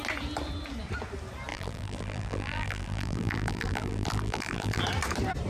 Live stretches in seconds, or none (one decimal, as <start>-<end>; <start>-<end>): 0.0-1.5; 4.8-5.5